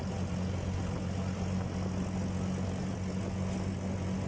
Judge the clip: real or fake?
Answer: real